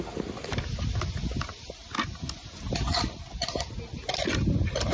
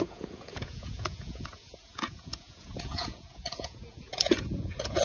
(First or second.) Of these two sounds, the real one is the first